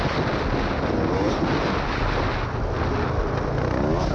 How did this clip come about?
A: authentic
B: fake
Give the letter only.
A